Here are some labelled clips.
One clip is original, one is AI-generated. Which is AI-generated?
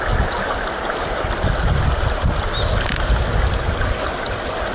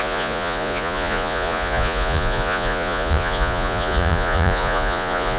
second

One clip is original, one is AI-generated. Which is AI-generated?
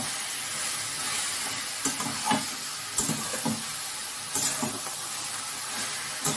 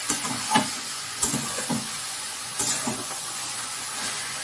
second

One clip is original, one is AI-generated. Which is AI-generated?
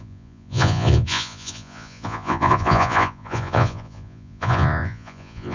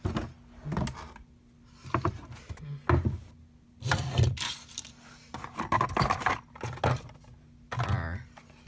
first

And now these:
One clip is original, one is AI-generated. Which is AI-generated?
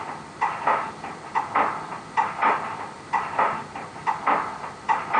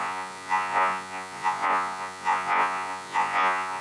second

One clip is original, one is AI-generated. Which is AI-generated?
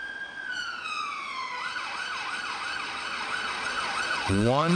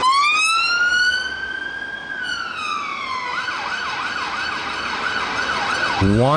first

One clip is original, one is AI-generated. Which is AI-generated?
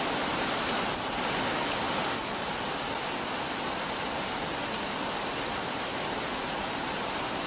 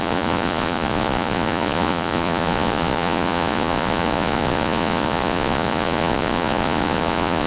second